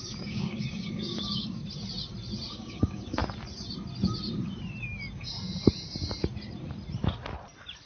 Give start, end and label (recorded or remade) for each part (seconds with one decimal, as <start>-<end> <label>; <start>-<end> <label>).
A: 0.0-1.6 remade; 1.6-2.5 recorded; 2.5-3.2 remade; 3.2-7.9 recorded